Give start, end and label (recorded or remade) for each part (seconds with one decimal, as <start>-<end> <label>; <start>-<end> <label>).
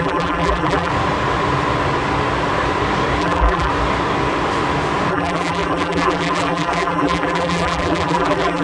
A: 0.0-0.9 remade; 0.9-3.2 recorded; 3.2-3.7 remade; 3.7-5.1 recorded; 5.1-8.6 remade